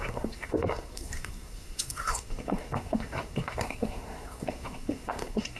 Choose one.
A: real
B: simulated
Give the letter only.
B